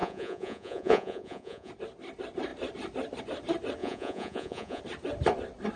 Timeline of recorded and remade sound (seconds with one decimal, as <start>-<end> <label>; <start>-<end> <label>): 0.0-1.7 remade; 1.7-3.8 recorded; 3.8-4.8 remade; 4.8-5.8 recorded

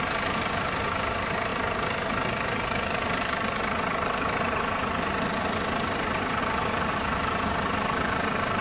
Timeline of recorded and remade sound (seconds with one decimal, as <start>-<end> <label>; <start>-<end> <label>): 0.0-8.6 recorded

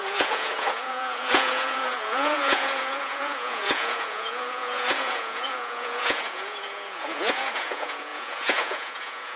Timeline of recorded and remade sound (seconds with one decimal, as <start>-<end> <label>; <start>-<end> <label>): 0.0-9.4 remade

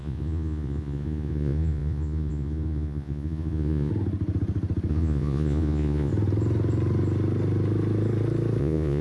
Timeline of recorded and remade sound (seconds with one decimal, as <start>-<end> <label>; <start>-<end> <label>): 0.0-3.9 remade; 3.9-4.9 recorded; 4.9-6.1 remade; 6.1-8.6 recorded; 8.6-9.0 remade

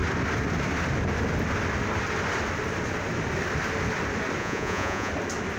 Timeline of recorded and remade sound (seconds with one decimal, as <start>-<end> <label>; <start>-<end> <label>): 0.0-4.4 recorded; 4.4-5.1 remade; 5.1-5.6 recorded

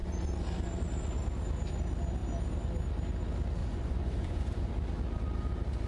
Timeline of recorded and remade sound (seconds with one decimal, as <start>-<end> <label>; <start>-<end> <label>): 0.0-3.6 recorded; 3.6-4.7 remade; 4.7-5.9 recorded

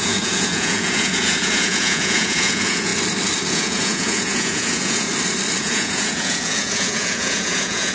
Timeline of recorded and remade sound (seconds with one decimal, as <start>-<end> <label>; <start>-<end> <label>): 0.0-2.9 remade; 2.9-3.5 recorded; 3.5-5.1 remade; 5.1-5.6 recorded; 5.6-7.9 remade